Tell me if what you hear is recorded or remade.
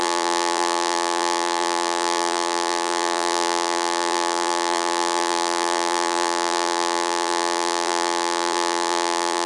remade